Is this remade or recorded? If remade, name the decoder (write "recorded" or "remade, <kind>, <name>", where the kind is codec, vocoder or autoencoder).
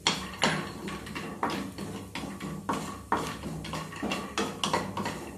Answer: recorded